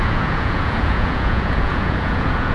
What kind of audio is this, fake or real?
fake